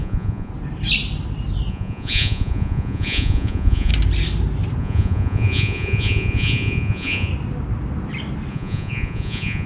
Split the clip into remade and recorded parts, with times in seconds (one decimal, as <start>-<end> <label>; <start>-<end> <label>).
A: 0.0-0.5 remade; 0.5-1.7 recorded; 1.7-3.9 remade; 3.9-4.8 recorded; 4.8-7.3 remade; 7.3-8.5 recorded; 8.5-9.7 remade